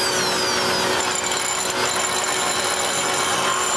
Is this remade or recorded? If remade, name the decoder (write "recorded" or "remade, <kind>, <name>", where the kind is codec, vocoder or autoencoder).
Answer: recorded